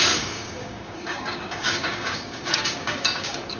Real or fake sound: fake